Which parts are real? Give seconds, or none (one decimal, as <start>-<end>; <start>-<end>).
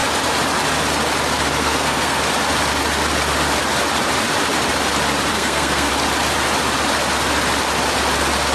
0.0-1.6; 2.2-5.3; 5.9-8.5